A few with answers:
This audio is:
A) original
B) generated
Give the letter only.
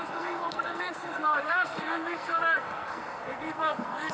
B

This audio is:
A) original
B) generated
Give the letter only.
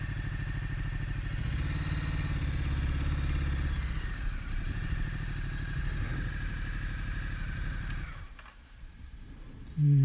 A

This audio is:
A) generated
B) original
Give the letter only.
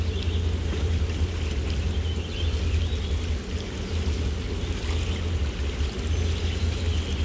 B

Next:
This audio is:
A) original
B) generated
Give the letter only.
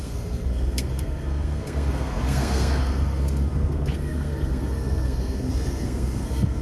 B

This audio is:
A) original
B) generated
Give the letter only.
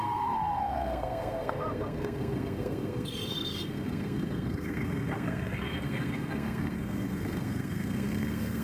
B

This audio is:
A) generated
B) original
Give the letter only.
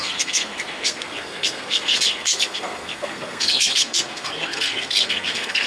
A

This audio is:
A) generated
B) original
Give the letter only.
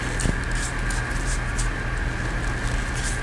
B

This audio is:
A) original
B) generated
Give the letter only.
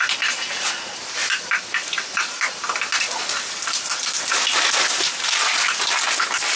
A